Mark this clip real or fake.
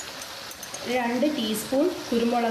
real